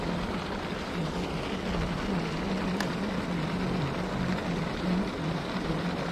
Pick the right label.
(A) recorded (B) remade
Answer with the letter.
A